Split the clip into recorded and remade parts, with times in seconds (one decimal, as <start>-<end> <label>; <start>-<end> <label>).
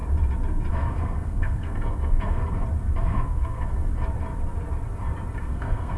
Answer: 0.0-0.7 recorded; 0.7-2.4 remade; 2.4-3.0 recorded; 3.0-3.9 remade; 3.9-5.4 recorded; 5.4-6.0 remade